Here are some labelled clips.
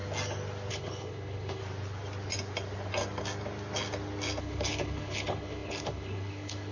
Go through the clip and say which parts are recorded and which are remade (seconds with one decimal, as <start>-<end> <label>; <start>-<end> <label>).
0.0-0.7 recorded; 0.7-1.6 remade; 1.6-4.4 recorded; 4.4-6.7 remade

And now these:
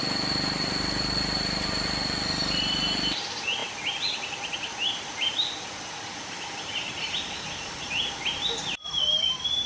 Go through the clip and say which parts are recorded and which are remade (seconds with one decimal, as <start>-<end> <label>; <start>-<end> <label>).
0.0-9.7 remade

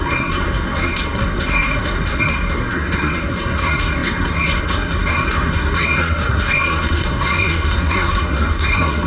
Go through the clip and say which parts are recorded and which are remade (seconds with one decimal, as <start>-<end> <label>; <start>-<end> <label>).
0.0-9.1 remade